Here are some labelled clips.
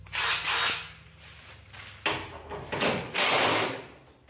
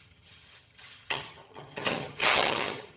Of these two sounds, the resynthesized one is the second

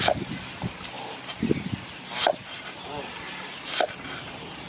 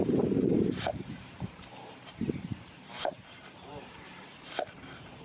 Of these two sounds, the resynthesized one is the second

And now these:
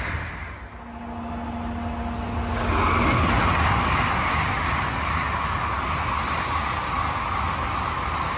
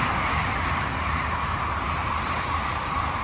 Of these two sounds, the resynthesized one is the second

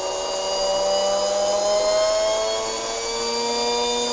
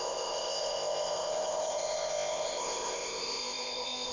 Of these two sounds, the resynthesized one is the second